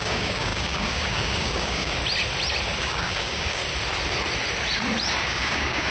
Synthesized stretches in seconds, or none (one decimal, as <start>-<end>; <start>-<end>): 0.0-2.0; 2.8-3.6; 5.2-5.9